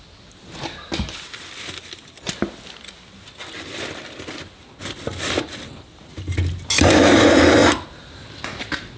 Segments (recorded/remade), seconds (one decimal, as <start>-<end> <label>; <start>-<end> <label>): 0.0-9.0 recorded

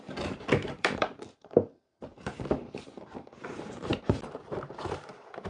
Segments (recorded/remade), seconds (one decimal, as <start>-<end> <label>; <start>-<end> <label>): 0.0-5.5 remade